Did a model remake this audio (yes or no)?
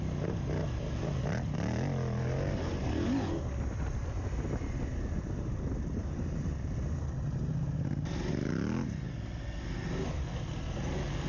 no